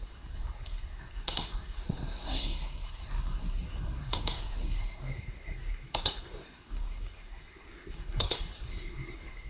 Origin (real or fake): fake